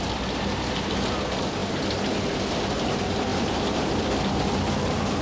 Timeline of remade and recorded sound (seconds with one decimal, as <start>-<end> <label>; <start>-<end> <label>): 0.0-3.3 recorded; 3.3-4.0 remade; 4.0-5.2 recorded